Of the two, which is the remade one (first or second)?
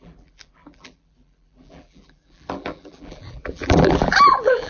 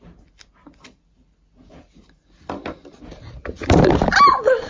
first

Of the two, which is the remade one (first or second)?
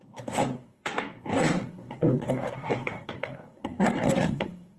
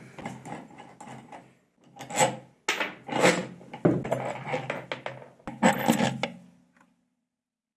first